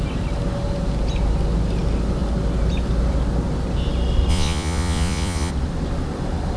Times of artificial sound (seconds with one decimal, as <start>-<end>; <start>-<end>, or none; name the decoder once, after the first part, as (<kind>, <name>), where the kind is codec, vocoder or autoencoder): 4.3-5.5 (vocoder, Vocos)